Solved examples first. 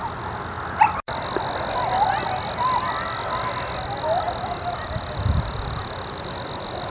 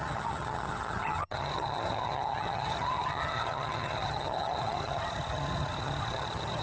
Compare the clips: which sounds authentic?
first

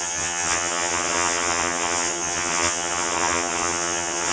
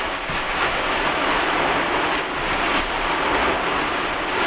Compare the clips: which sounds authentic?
second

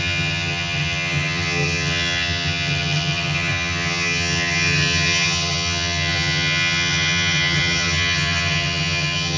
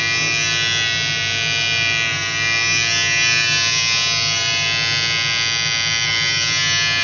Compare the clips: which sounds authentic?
second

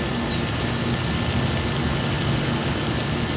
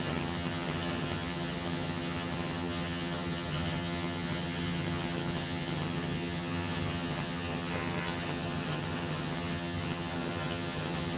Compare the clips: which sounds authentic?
first